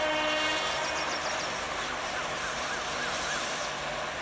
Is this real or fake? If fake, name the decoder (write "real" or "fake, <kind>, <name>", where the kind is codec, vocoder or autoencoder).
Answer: real